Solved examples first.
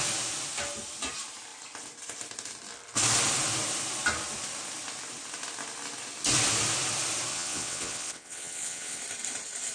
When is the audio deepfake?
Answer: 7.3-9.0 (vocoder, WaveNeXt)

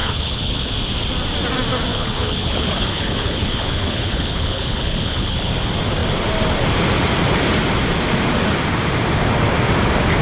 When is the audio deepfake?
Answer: 0.0-0.7 (codec, HILCodec); 1.9-5.5